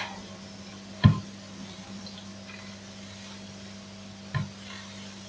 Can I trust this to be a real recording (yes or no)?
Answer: yes